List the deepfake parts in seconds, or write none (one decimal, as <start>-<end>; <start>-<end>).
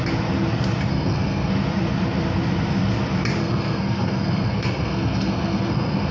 0.9-1.5; 3.4-6.1